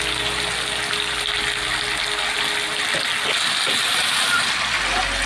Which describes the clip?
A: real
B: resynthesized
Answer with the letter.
A